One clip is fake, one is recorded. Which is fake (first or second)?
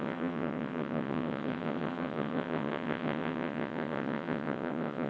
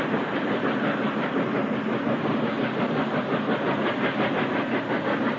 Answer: first